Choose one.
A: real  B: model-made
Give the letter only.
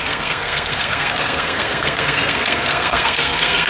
B